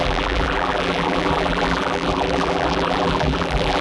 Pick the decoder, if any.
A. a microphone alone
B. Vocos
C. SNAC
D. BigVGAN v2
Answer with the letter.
D